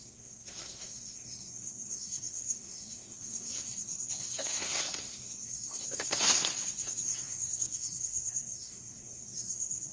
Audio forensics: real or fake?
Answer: fake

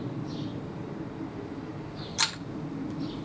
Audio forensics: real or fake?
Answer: real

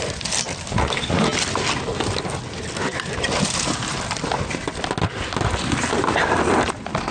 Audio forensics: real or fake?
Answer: real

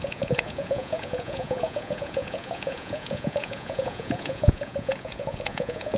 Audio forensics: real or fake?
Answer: fake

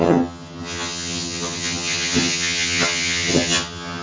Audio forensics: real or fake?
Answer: fake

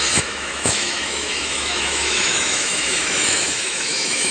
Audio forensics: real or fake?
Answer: fake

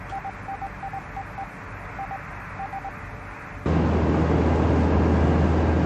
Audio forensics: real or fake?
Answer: real